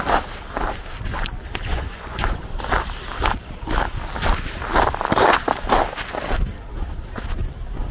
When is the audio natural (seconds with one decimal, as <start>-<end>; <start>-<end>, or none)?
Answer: 0.0-1.7; 2.4-7.9